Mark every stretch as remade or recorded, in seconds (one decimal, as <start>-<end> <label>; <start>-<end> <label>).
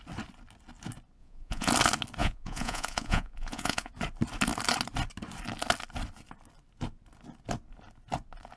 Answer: 0.0-1.2 recorded; 1.2-1.7 remade; 1.7-2.2 recorded; 2.2-3.9 remade; 3.9-8.6 recorded